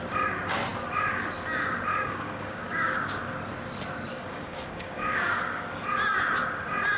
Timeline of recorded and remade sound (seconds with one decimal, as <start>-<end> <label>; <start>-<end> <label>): 0.0-1.9 recorded; 1.9-3.3 remade; 3.3-4.1 recorded; 4.1-5.8 remade; 5.8-7.0 recorded